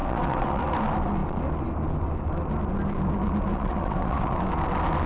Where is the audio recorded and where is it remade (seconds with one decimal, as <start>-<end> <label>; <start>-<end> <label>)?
0.0-0.6 remade; 0.6-3.5 recorded; 3.5-4.4 remade; 4.4-5.1 recorded